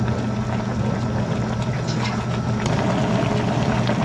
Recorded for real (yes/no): yes